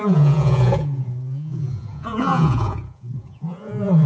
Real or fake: fake